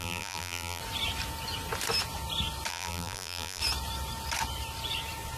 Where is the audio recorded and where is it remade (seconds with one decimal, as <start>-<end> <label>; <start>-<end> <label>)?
0.0-0.8 remade; 0.8-2.7 recorded; 2.7-3.6 remade; 3.6-5.4 recorded